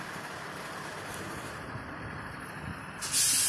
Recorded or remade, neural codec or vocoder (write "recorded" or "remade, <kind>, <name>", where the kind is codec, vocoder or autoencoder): recorded